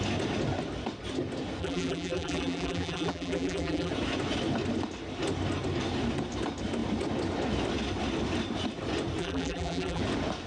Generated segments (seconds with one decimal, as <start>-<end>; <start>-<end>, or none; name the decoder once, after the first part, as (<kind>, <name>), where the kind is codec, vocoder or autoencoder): 1.6-3.9 (vocoder, BigVGAN v2); 9.2-10.0